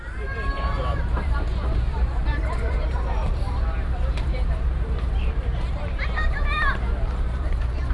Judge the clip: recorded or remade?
remade